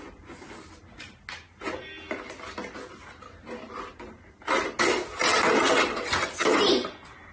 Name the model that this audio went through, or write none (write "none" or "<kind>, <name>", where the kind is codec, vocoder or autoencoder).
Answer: none